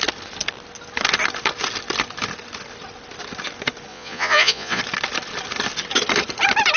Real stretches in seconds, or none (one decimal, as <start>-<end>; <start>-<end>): 0.0-3.9; 4.8-6.8